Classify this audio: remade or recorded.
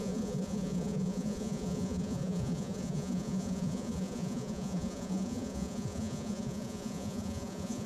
remade